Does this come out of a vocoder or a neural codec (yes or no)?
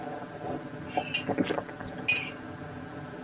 no